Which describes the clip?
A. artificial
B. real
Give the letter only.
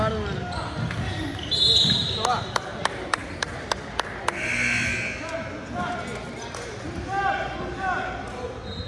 B